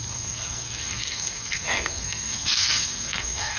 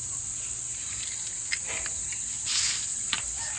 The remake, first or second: first